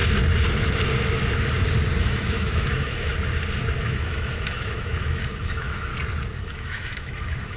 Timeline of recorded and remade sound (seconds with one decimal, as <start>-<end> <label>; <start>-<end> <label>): 0.0-2.0 recorded; 2.0-3.1 remade; 3.1-3.8 recorded; 3.8-5.9 remade; 5.9-6.4 recorded; 6.4-7.6 remade